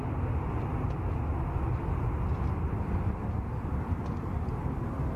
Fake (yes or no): no